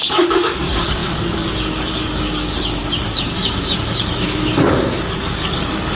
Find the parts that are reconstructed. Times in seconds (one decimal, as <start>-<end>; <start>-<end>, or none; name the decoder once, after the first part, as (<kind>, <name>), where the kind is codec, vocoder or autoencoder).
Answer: 0.0-5.9 (codec, DAC)